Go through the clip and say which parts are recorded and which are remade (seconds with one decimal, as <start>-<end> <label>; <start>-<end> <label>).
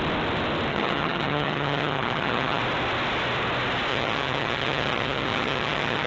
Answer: 0.0-0.7 recorded; 0.7-2.6 remade; 2.6-3.9 recorded; 3.9-6.1 remade